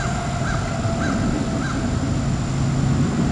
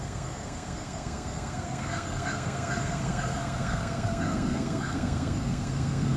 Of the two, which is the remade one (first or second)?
second